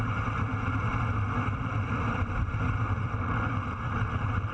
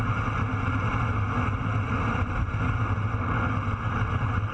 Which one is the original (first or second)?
second